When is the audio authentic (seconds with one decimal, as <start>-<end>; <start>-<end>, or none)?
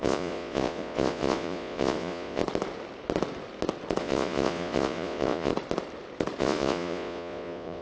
2.4-4.0; 5.5-6.4